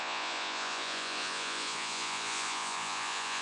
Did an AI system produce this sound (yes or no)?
yes